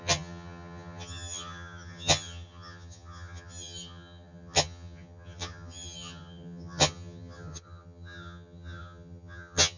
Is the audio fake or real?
fake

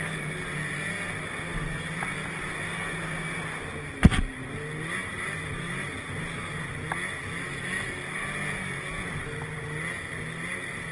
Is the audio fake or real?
real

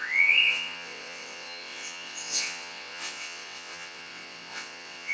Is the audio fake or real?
fake